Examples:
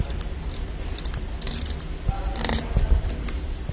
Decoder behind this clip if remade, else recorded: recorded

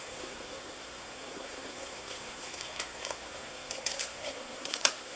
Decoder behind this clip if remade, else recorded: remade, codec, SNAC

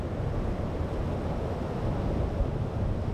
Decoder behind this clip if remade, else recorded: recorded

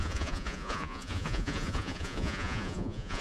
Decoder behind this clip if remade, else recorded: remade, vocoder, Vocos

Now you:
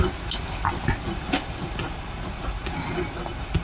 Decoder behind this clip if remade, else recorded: recorded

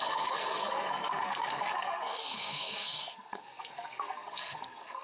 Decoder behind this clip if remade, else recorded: remade, codec, SNAC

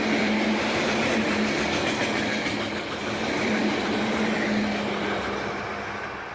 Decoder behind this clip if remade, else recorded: recorded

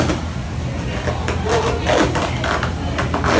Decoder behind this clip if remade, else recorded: recorded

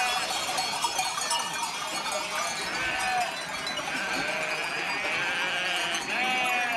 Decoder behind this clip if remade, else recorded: recorded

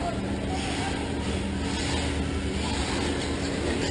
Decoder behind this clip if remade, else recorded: recorded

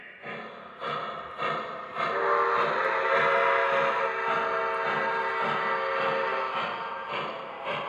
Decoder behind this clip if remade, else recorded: recorded